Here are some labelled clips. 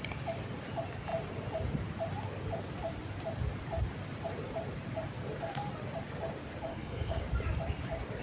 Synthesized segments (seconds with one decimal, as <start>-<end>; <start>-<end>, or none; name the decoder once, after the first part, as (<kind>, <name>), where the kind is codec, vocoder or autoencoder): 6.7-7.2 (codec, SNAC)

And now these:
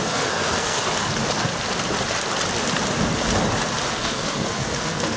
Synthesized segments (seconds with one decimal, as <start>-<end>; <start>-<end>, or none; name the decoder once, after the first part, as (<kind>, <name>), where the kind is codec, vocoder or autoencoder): 0.0-0.8 (codec, SNAC); 3.9-5.2

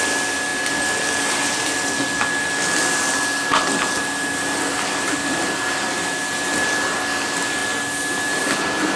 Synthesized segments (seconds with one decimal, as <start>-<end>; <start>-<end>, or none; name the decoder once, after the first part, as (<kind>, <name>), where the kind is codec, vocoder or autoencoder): none